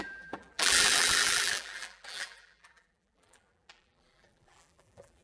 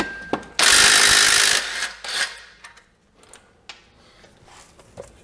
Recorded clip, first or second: second